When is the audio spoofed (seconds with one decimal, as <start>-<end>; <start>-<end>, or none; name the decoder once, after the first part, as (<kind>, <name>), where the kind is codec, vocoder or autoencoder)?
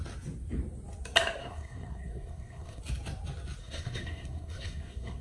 1.4-2.8 (codec, SNAC); 3.6-5.2